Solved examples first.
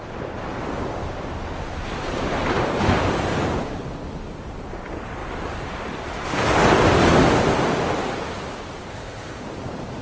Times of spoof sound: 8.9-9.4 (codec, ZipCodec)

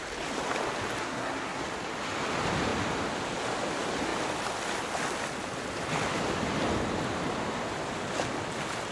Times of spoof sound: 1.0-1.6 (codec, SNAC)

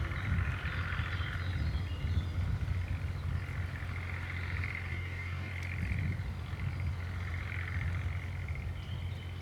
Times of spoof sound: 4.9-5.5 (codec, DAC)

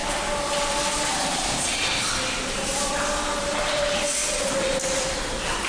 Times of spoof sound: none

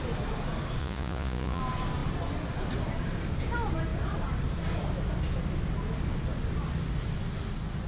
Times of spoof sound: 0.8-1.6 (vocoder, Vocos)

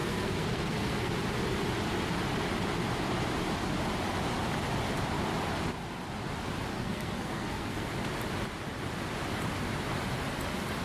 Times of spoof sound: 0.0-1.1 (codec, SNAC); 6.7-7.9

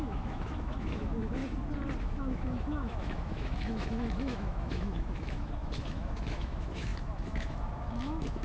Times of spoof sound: 0.0-1.4 (autoencoder, DAC-VAE); 2.0-8.4

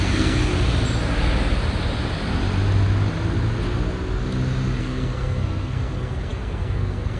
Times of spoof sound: 0.0-0.5 (codec, SNAC); 4.8-7.2